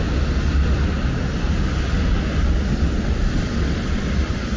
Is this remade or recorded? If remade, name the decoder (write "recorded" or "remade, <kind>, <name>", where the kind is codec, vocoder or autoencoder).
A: recorded